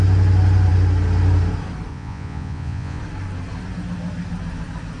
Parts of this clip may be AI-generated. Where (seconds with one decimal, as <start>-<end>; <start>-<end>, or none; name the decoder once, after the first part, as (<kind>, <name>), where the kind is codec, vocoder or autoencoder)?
1.9-3.0 (vocoder, Vocos)